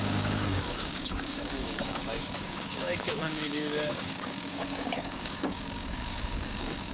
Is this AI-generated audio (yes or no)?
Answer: yes